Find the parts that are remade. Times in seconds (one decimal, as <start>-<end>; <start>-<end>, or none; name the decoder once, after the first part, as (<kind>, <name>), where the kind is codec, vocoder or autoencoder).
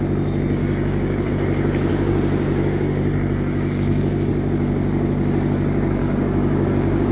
0.6-1.3 (codec, DAC); 1.9-4.3; 6.0-7.1